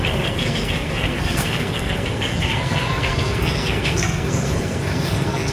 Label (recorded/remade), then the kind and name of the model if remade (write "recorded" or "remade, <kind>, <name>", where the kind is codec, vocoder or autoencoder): remade, codec, SNAC